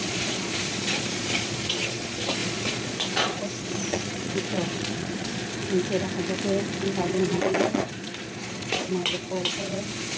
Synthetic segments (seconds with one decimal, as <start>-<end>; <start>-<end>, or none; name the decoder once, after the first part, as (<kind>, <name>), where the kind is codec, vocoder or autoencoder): 0.0-5.6 (vocoder, Vocos); 7.0-10.2